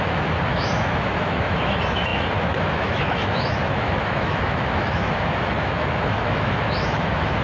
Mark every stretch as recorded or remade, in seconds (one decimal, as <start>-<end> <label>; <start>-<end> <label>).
0.0-7.4 remade